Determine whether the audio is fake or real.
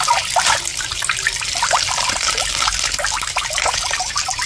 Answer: real